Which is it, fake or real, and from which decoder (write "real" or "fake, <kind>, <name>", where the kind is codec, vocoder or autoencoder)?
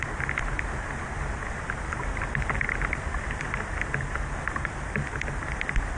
real